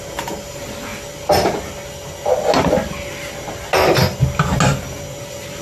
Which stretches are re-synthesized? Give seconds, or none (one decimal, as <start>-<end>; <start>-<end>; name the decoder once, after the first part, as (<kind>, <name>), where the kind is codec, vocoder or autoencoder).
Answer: none